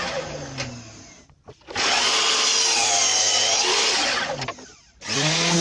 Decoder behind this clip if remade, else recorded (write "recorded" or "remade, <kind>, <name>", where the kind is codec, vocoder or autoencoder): recorded